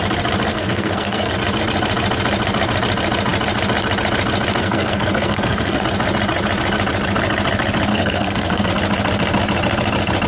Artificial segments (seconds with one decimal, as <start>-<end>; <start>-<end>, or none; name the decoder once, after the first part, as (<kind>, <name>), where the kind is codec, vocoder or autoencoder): 0.5-1.3 (codec, SNAC); 4.6-5.8; 7.9-8.7